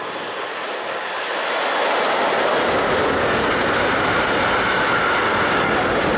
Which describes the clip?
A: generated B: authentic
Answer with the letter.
B